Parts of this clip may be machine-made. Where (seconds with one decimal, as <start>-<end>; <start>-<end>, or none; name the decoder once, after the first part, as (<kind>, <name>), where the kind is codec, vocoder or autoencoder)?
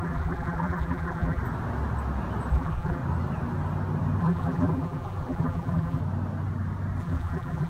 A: 0.0-1.4 (vocoder, BigVGAN v2); 2.5-3.0; 4.2-6.0; 7.0-7.7